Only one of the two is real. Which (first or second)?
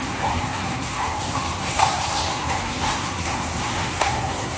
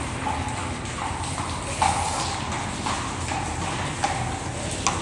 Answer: second